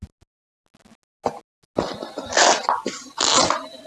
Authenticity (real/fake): real